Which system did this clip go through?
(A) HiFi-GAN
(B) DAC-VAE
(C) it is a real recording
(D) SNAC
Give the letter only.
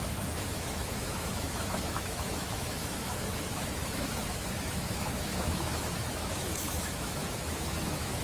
B